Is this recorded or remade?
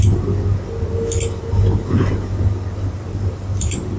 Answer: recorded